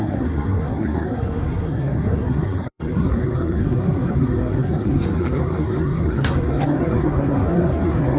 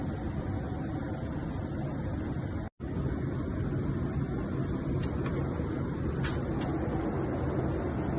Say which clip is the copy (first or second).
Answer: first